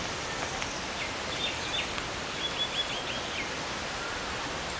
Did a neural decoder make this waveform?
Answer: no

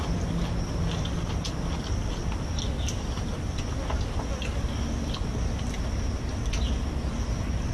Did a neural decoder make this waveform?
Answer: no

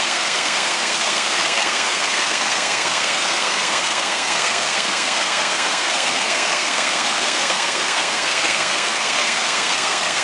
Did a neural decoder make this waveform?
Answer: yes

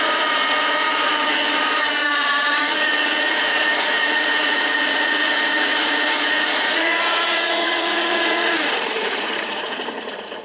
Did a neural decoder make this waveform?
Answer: yes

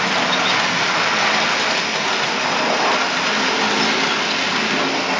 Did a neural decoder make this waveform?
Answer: no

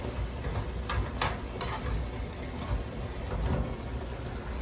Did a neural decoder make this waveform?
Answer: no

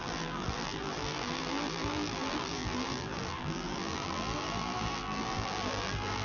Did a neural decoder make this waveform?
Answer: yes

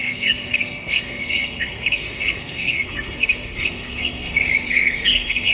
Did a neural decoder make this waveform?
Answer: yes